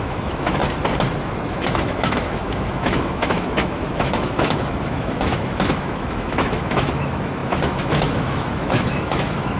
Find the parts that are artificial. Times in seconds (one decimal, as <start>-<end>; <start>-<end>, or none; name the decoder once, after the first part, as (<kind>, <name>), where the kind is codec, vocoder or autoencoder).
0.0-0.6 (autoencoder, DAC-VAE); 1.5-9.6